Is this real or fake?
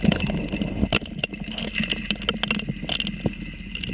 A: real